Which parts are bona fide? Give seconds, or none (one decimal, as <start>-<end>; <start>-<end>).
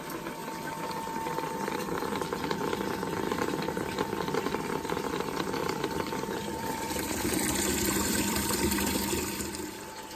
0.0-5.6; 9.0-10.1